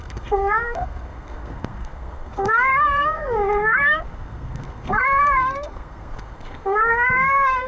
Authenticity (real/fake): fake